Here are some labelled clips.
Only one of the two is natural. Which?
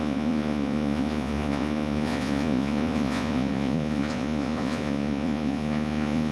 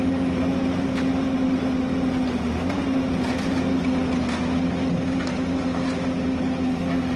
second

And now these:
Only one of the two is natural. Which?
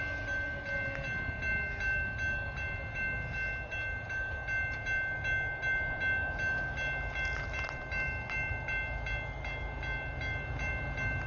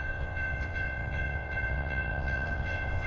first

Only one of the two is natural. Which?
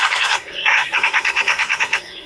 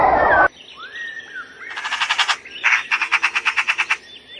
second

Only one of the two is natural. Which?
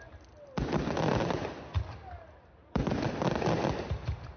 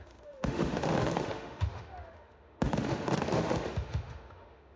first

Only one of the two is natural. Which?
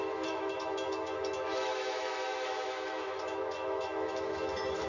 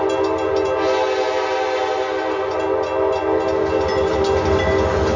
second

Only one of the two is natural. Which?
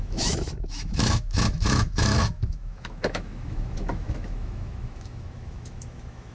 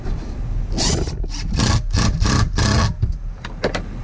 second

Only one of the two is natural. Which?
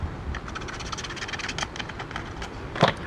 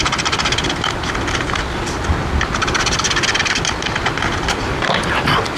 first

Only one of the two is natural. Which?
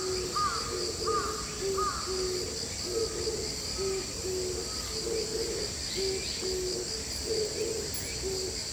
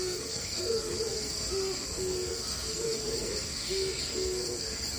first